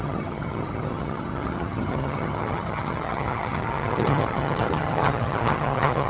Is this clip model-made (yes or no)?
yes